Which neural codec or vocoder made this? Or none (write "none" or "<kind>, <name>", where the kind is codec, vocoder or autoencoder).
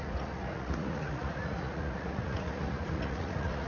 vocoder, Vocos